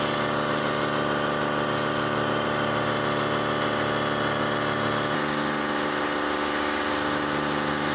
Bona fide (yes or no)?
yes